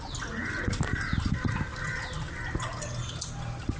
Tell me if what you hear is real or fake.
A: real